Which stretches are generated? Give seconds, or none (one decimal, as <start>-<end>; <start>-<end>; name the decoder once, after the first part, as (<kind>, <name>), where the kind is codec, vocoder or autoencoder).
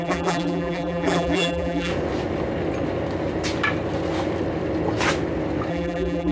0.0-1.9 (vocoder, BigVGAN v2); 5.7-6.3